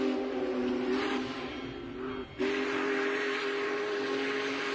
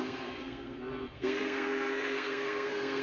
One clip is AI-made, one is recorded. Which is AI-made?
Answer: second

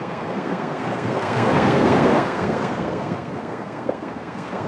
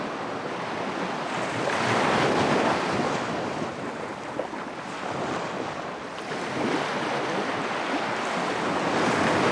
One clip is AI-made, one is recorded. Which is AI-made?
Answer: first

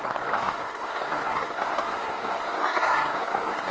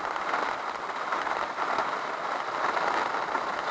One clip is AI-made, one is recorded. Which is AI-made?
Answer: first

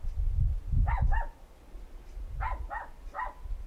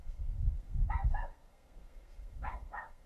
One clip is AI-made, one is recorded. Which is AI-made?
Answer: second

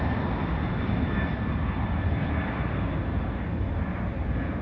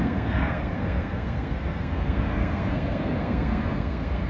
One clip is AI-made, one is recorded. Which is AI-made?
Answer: second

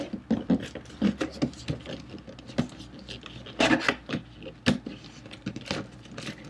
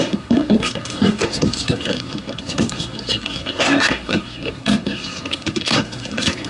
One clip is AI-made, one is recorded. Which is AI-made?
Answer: second